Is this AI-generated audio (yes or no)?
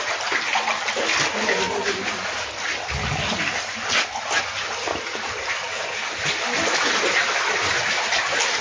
no